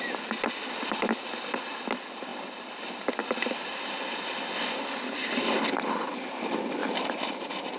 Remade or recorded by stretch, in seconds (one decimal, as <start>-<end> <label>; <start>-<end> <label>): 0.0-6.8 recorded; 6.8-7.8 remade